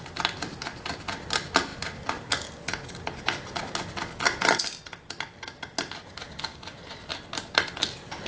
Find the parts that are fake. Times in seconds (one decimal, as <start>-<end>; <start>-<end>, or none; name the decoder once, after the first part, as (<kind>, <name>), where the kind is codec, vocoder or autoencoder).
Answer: none